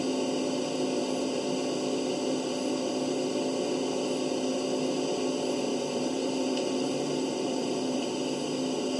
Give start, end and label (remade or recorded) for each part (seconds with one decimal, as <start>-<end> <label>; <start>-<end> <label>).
0.0-5.7 recorded; 5.7-8.0 remade; 8.0-9.0 recorded